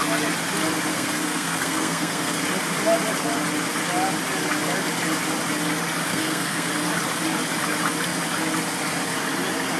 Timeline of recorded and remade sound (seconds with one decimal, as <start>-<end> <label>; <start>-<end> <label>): 0.0-0.9 recorded; 0.9-2.4 remade; 2.4-6.1 recorded; 6.1-6.7 remade; 6.7-9.8 recorded